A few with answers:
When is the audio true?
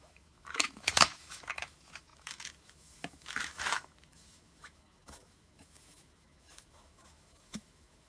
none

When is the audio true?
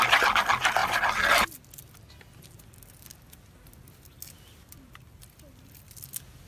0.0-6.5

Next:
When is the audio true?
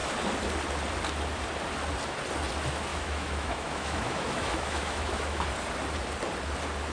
0.0-2.9; 5.4-6.9